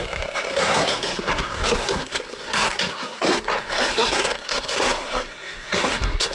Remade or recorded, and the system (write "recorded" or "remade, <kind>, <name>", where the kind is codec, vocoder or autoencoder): remade, codec, SNAC